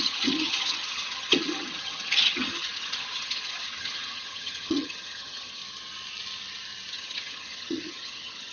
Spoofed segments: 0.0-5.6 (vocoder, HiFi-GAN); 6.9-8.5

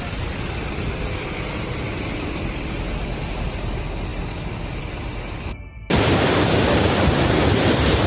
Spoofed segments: none